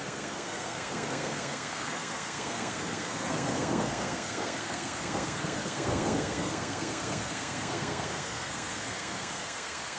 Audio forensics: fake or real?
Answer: fake